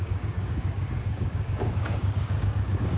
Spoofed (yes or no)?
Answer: yes